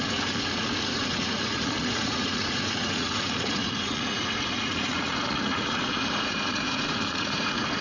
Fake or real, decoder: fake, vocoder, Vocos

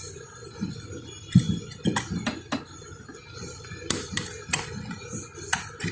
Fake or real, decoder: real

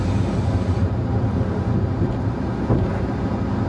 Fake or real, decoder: real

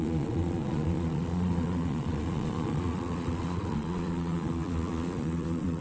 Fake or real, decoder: fake, vocoder, Vocos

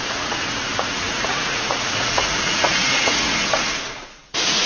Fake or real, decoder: fake, vocoder, Vocos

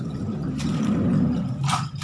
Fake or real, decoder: real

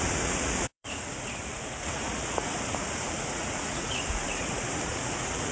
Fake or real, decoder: fake, vocoder, Vocos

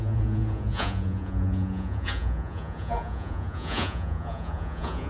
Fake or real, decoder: fake, vocoder, Vocos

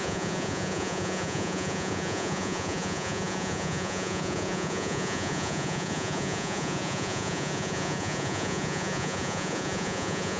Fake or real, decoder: fake, vocoder, Vocos